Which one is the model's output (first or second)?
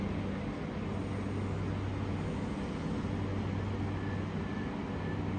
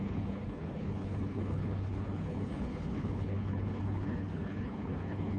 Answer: second